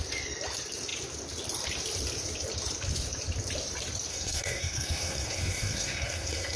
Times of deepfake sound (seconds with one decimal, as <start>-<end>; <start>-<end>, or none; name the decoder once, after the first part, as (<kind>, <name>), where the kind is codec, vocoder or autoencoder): 4.1-6.6 (codec, SNAC)